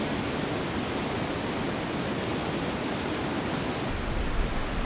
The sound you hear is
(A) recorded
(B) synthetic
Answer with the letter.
A